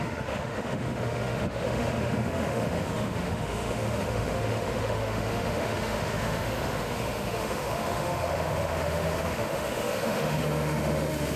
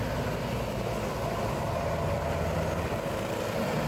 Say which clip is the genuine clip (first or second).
second